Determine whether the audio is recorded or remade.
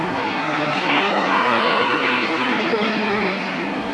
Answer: remade